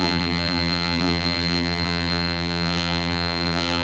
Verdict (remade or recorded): remade